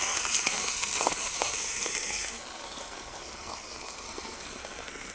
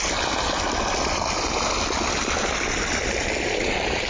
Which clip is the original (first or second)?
second